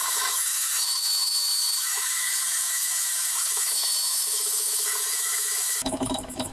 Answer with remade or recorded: remade